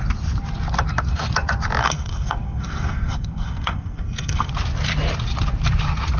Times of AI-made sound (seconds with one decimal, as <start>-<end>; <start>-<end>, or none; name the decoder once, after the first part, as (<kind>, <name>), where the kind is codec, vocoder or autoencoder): 1.8-4.5 (codec, SNAC)